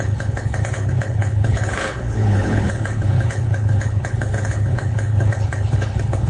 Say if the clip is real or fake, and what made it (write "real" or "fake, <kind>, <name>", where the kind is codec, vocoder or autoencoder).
fake, codec, HILCodec